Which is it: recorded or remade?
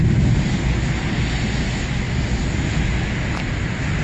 recorded